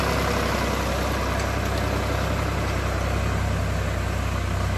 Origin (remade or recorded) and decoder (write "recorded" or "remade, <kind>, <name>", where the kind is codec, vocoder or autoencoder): recorded